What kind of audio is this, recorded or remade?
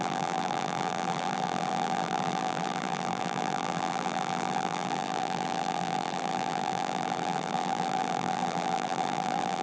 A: remade